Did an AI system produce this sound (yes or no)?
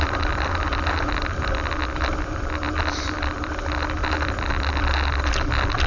no